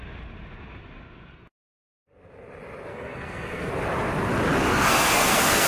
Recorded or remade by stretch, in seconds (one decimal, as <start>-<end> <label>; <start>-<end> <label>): 0.0-2.9 recorded; 2.9-3.7 remade; 3.7-4.7 recorded; 4.7-5.7 remade